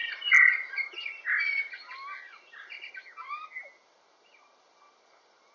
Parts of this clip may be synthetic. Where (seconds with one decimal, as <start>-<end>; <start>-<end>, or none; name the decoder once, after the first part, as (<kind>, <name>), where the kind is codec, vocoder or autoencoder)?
none